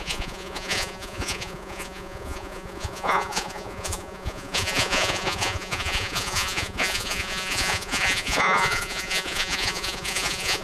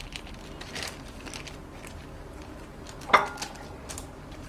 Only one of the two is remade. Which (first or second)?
first